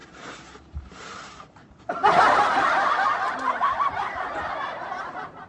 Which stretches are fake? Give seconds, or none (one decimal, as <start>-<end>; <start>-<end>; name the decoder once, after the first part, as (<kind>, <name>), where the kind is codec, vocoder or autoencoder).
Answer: 0.0-5.5 (vocoder, BigVGAN v2)